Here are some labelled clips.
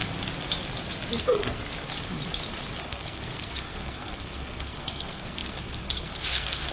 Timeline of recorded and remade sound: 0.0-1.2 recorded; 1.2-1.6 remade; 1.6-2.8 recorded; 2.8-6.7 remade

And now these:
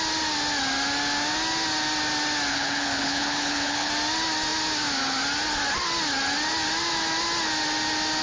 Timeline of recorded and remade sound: 0.0-2.5 recorded; 2.5-3.9 remade; 3.9-8.2 recorded

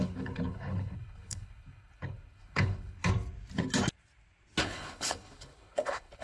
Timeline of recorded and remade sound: 0.0-3.0 remade; 3.0-4.6 recorded; 4.6-6.2 remade

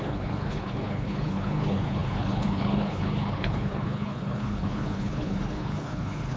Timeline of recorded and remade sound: 0.0-6.4 remade

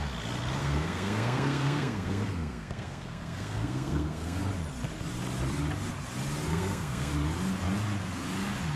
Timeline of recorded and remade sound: 0.0-0.6 recorded; 0.6-4.4 remade; 4.4-6.5 recorded; 6.5-7.1 remade; 7.1-8.8 recorded

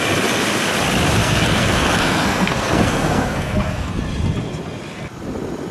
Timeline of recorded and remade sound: 0.0-1.2 recorded; 1.2-4.0 remade; 4.0-5.7 recorded

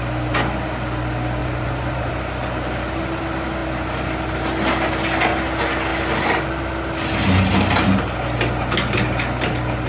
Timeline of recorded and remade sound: 0.0-1.4 recorded; 1.4-2.1 remade; 2.1-9.9 recorded

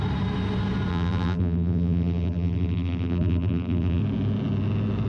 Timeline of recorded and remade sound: 0.0-0.9 recorded; 0.9-4.0 remade; 4.0-5.1 recorded